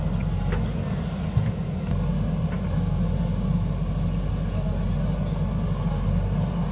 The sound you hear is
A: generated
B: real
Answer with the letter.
B